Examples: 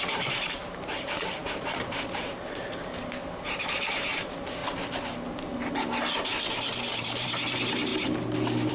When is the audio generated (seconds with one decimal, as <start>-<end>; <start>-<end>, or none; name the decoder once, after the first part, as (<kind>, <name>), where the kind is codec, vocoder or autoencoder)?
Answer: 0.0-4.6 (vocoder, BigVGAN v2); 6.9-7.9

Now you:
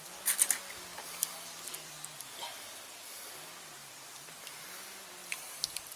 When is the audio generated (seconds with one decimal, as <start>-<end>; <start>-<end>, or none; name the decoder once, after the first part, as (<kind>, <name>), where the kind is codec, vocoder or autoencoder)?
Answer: 0.9-2.6 (vocoder, BigVGAN v2); 3.8-4.6; 5.2-6.0

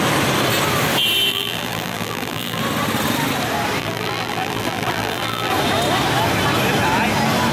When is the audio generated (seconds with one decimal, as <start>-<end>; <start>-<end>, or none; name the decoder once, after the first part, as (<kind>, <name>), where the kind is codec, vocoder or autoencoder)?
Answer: 1.3-2.6 (vocoder, BigVGAN v2); 3.8-5.5

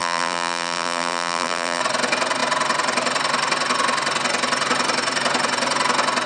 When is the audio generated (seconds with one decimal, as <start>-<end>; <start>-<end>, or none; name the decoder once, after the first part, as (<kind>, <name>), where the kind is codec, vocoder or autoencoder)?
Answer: 0.0-1.8 (vocoder, BigVGAN v2)